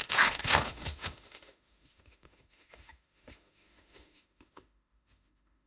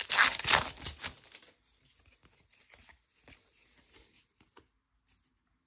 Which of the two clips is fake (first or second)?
first